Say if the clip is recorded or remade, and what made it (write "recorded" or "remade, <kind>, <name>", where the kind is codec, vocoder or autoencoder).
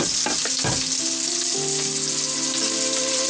recorded